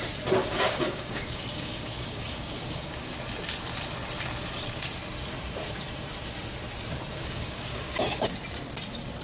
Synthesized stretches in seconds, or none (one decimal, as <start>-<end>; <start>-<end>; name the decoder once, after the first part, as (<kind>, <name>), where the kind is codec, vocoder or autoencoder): 0.4-3.1 (codec, DAC); 7.2-8.3

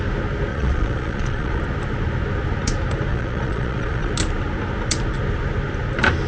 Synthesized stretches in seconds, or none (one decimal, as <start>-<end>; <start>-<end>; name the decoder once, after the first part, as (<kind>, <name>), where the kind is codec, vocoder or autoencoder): 0.5-1.6 (vocoder, Vocos); 3.1-4.1